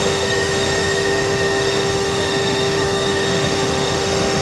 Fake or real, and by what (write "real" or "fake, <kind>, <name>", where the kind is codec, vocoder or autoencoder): fake, autoencoder, DAC-VAE